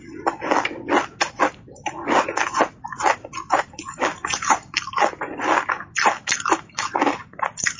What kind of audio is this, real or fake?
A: real